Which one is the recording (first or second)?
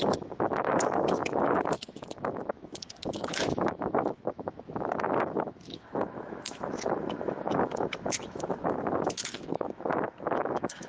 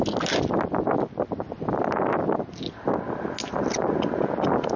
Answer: second